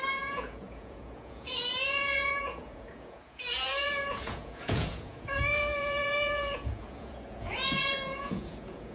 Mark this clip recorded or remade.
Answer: remade